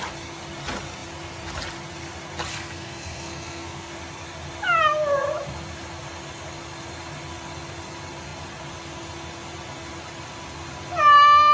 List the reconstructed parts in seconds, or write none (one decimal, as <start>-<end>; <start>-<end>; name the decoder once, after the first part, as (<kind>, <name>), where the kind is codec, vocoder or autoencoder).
2.5-3.9 (codec, SNAC)